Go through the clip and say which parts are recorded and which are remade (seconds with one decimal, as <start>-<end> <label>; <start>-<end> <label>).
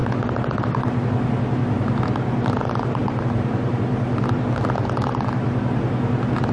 0.0-3.0 recorded; 3.0-3.7 remade; 3.7-6.5 recorded